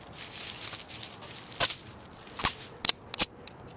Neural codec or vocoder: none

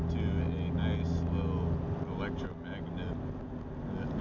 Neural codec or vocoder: none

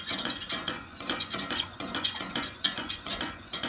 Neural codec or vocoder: vocoder, Vocos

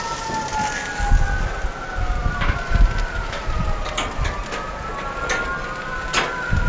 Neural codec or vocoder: none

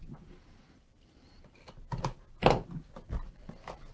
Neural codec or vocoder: none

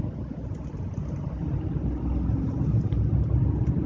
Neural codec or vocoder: none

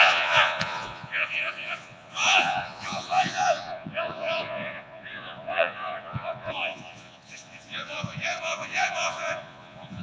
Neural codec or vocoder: vocoder, Vocos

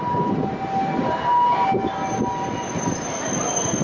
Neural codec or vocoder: none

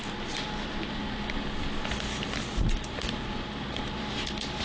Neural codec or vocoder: none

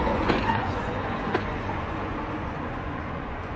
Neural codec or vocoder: vocoder, Vocos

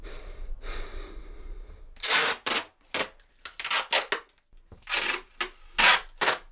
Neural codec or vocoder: none